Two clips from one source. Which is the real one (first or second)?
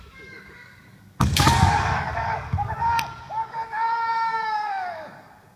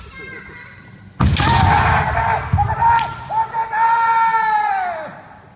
second